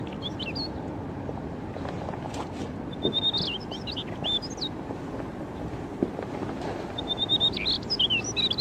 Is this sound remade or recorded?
recorded